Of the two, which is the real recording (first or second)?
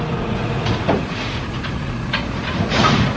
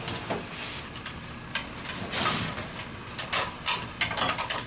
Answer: second